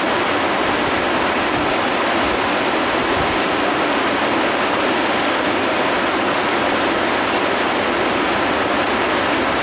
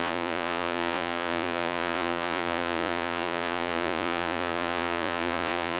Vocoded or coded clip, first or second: second